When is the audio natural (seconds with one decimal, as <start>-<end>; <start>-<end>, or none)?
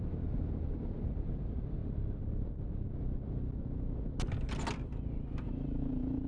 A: 1.8-5.4